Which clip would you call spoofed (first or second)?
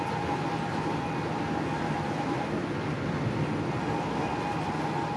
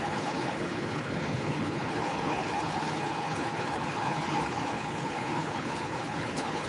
second